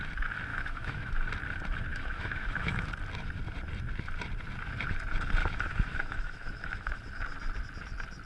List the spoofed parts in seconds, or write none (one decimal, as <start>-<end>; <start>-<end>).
0.5-1.1; 1.9-2.9; 5.4-7.0